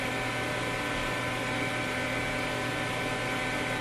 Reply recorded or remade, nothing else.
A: recorded